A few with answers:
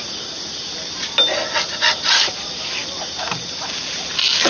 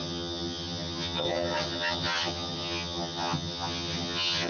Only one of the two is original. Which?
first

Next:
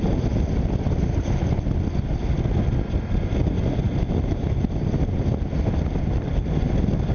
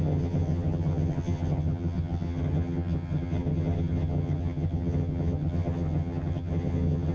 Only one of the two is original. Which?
first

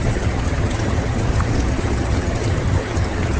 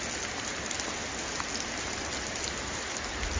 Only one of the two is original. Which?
second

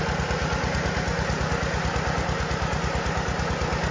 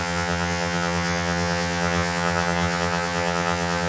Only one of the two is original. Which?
first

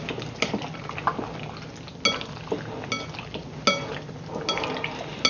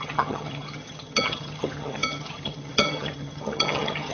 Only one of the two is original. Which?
first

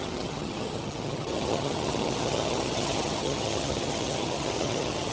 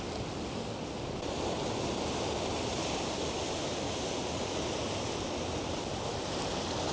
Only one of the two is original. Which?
second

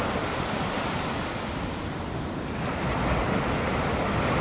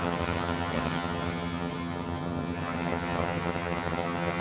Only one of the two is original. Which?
first